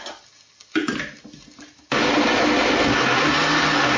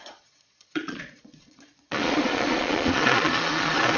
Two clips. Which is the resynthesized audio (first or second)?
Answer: second